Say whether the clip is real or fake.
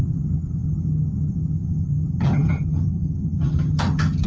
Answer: fake